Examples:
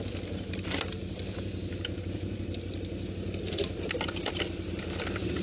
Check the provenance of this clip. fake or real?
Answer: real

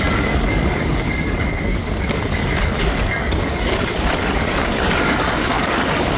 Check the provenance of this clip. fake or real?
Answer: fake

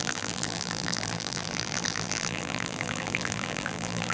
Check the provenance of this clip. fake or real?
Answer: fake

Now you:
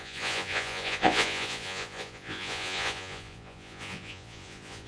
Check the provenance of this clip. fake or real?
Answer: fake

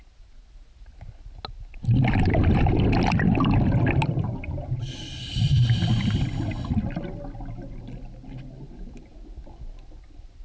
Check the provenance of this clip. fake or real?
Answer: real